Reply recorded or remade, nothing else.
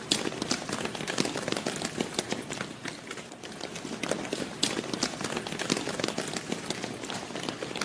recorded